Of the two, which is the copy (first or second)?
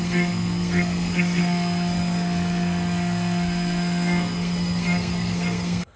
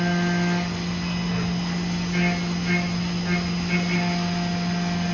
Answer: first